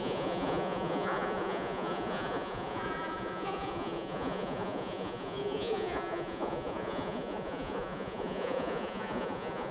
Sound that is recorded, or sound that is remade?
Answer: remade